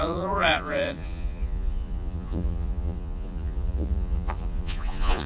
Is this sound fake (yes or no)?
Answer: yes